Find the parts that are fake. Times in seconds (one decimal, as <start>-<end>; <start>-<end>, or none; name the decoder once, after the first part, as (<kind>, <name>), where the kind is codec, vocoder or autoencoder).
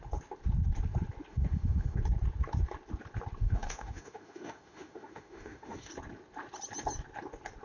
1.3-2.0 (autoencoder, DAC-VAE); 3.4-5.9